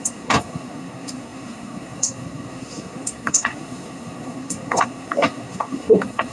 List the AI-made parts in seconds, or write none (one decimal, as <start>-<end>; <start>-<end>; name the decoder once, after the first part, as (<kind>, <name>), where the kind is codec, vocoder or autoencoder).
0.0-6.3 (codec, SNAC)